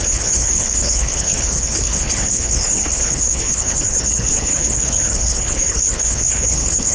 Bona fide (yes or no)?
no